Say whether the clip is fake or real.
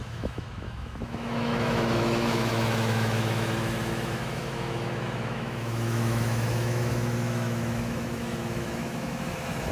fake